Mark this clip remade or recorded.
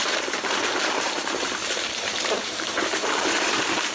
remade